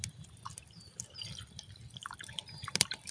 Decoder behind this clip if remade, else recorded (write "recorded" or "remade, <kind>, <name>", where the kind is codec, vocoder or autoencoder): recorded